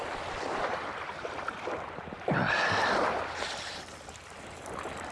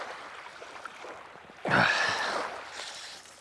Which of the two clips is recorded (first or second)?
second